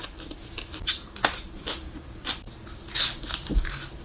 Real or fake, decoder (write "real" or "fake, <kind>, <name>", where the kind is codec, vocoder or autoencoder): real